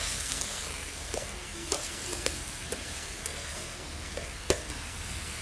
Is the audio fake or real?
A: fake